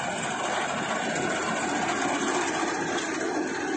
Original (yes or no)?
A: yes